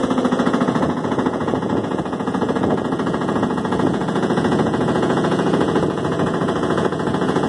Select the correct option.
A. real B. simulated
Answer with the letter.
B